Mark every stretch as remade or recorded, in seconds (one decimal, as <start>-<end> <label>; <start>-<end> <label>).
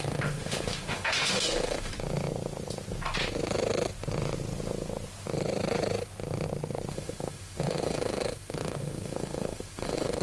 0.0-1.9 remade; 1.9-6.9 recorded; 6.9-10.2 remade